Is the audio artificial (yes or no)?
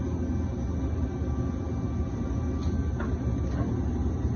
no